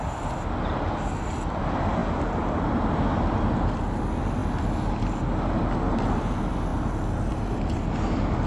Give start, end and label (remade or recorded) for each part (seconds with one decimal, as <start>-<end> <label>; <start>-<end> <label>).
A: 0.0-8.5 recorded